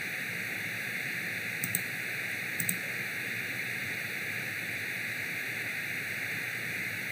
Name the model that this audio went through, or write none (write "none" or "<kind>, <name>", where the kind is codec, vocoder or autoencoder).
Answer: vocoder, BigVGAN v2